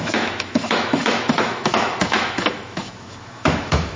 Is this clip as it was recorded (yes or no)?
no